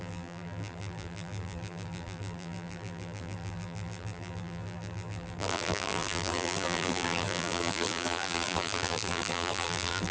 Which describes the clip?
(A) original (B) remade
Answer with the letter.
B